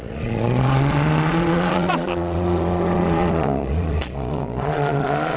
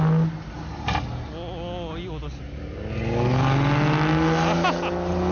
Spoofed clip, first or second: first